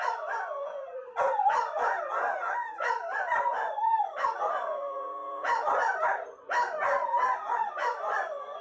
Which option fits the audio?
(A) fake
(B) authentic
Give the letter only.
A